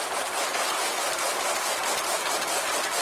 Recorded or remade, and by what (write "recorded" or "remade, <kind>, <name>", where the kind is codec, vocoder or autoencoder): recorded